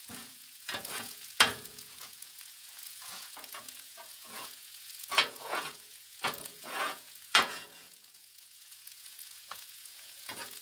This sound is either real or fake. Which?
fake